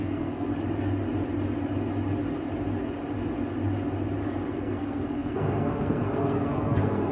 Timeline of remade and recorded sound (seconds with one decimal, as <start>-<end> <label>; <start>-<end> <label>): 0.0-0.5 remade; 0.5-4.5 recorded; 4.5-7.1 remade